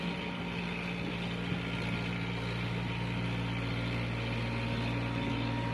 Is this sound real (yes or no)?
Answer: yes